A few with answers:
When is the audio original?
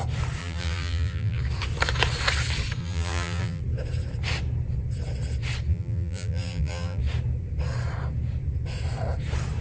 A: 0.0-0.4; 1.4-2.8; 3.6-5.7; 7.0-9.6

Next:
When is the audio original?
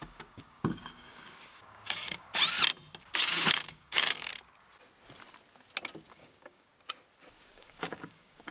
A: 2.3-3.2; 4.3-6.1; 6.7-7.3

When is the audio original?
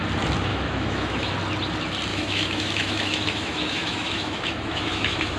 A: 0.0-0.5; 1.3-2.1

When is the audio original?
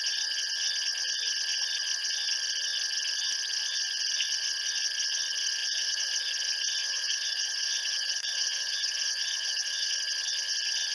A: 0.0-5.6; 6.3-6.8; 9.9-10.9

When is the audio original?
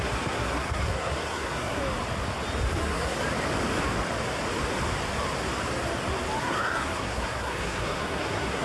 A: 1.8-2.8; 3.2-6.4